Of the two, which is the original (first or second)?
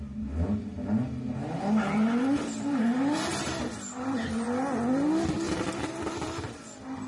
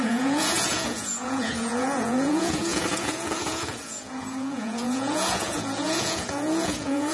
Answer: first